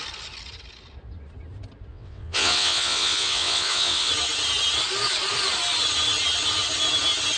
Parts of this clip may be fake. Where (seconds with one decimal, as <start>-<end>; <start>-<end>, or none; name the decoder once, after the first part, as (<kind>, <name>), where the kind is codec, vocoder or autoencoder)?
1.9-4.1 (vocoder, WaveNeXt)